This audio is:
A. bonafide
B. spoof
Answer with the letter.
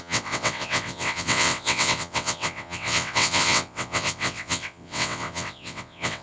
B